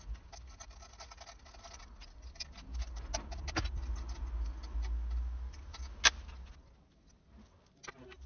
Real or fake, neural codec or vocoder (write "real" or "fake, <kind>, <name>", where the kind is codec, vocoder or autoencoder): real